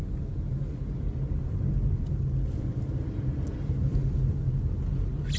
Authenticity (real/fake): real